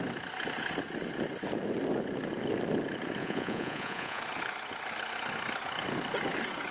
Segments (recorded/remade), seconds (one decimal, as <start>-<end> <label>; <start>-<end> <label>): 0.0-3.2 recorded; 3.2-4.2 remade; 4.2-6.7 recorded